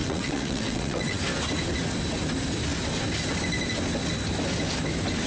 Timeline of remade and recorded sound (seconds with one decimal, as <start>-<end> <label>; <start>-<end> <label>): 0.0-1.2 remade; 1.2-5.3 recorded